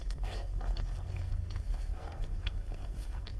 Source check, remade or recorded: remade